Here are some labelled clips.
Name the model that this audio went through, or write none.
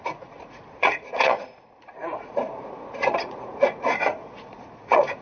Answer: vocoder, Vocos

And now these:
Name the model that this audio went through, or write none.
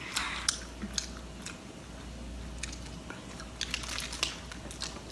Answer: none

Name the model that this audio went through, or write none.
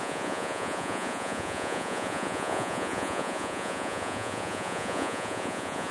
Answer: vocoder, Vocos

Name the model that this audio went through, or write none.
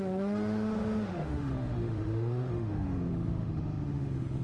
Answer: autoencoder, DAC-VAE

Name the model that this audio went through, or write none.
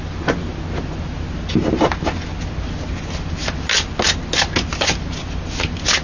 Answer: none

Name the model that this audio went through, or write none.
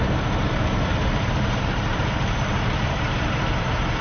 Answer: vocoder, BigVGAN v2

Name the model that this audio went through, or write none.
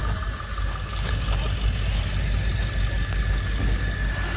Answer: none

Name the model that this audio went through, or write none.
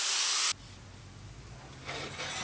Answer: none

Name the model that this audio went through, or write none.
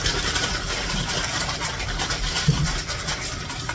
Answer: none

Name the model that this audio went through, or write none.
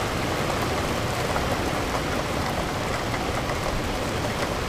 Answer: none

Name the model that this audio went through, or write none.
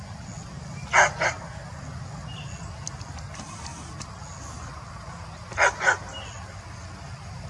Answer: none